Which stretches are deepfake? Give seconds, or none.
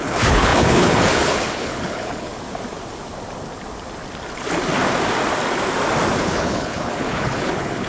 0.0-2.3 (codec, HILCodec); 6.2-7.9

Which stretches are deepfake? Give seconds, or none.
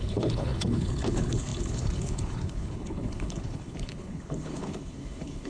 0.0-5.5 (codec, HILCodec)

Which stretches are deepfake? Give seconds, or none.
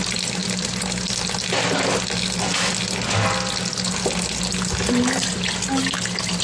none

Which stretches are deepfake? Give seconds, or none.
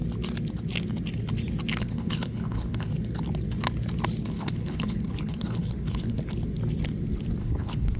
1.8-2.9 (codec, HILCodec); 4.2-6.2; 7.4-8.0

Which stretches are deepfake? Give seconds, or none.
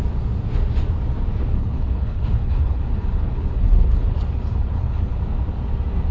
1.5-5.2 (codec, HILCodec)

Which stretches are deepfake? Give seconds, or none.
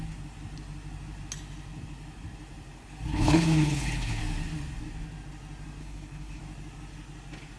3.1-4.2 (codec, HILCodec); 5.8-6.4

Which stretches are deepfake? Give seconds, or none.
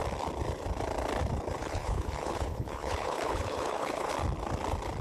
1.6-4.1 (codec, HILCodec)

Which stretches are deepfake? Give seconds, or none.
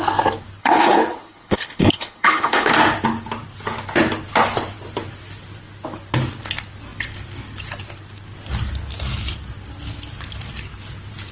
0.6-2.7 (codec, HILCodec)